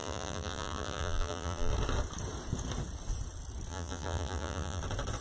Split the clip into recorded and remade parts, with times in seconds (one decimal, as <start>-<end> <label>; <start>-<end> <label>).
0.0-1.7 remade; 1.7-3.7 recorded; 3.7-4.8 remade; 4.8-5.2 recorded